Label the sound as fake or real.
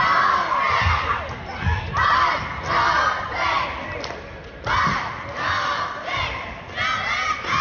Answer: real